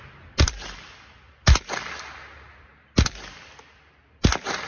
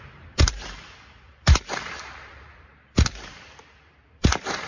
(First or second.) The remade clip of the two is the second